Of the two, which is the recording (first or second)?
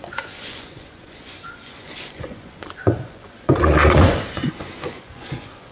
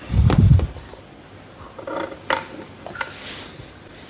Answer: second